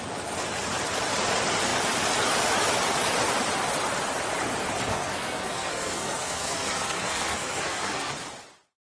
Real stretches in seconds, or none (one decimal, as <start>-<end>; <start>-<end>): 0.0-4.9; 8.1-8.8